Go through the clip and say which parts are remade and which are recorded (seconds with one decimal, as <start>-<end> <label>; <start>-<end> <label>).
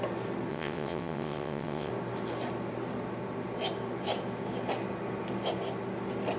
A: 0.0-0.5 recorded; 0.5-1.9 remade; 1.9-6.4 recorded